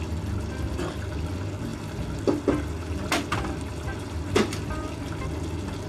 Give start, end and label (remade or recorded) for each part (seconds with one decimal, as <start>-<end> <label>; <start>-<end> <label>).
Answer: 0.0-5.9 recorded